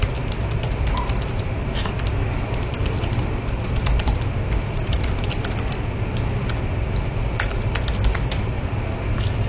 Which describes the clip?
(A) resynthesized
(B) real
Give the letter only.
A